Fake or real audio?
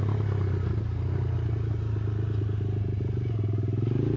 real